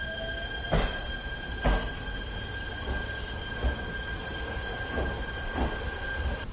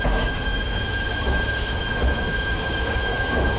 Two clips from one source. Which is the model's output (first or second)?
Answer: second